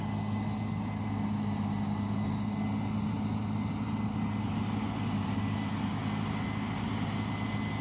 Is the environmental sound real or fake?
real